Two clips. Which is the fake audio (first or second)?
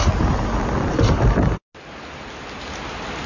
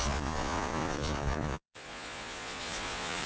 second